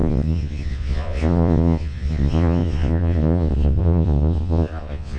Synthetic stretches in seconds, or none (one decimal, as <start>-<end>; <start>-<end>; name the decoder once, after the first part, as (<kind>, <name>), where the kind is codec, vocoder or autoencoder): 0.0-5.2 (vocoder, Vocos)